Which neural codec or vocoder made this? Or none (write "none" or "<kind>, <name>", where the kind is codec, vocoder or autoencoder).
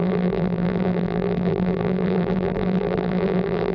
vocoder, BigVGAN v2